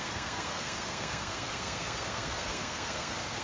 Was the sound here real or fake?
fake